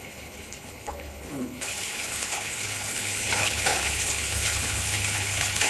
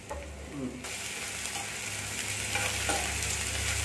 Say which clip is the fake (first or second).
first